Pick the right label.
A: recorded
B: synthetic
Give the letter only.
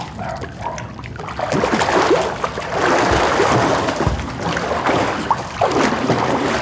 A